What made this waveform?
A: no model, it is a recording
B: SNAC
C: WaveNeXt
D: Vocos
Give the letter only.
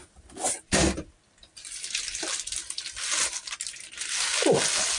A